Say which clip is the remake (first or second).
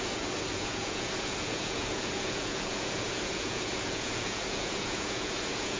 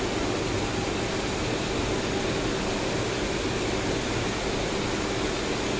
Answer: first